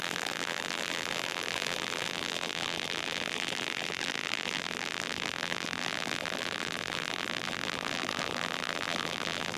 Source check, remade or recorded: remade